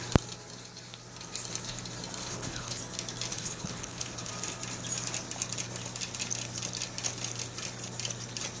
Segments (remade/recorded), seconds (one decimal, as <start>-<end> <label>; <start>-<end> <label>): 0.0-2.2 recorded; 2.2-2.8 remade; 2.8-3.3 recorded; 3.3-4.3 remade; 4.3-8.6 recorded